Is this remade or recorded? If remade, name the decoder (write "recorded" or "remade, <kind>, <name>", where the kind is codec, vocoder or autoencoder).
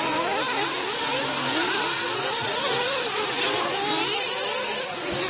recorded